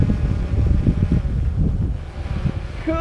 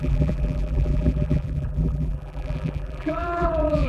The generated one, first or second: second